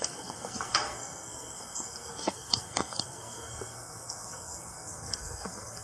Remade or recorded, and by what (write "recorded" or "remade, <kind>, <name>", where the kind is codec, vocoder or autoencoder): remade, codec, SNAC